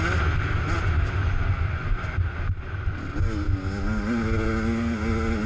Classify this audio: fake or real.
real